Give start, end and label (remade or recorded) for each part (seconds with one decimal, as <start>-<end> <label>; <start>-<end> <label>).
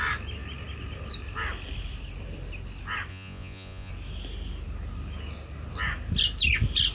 0.0-3.1 recorded; 3.1-3.9 remade; 3.9-6.9 recorded